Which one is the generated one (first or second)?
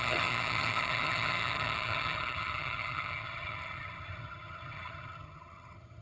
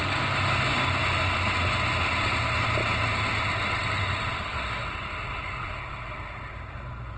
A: first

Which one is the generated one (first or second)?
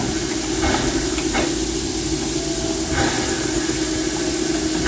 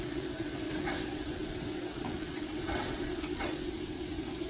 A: second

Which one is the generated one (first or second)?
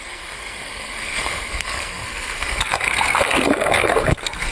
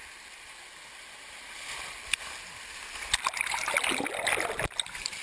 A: first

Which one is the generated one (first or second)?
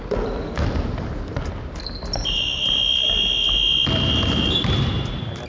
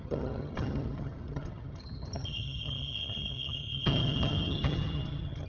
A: second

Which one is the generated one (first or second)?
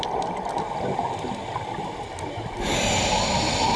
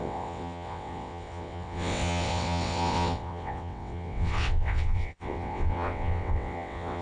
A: second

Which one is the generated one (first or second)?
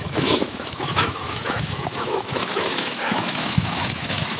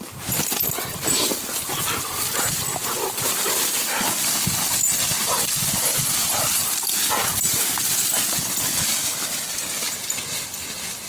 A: first